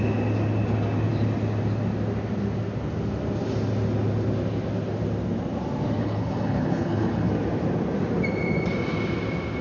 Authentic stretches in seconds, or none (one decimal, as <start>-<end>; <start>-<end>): 0.0-6.0; 7.3-9.6